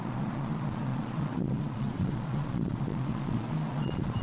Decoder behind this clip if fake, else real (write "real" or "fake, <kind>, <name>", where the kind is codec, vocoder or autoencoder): fake, vocoder, Vocos